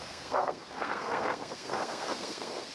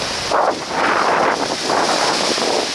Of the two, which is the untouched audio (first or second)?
second